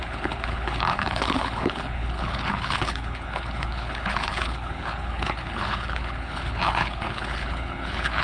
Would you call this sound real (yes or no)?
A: no